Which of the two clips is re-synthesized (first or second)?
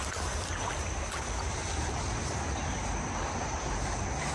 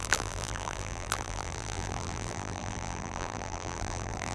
second